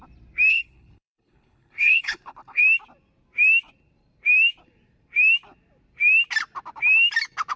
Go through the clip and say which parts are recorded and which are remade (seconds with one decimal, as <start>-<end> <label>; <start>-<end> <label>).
0.0-0.5 recorded; 0.5-2.6 remade; 2.6-7.6 recorded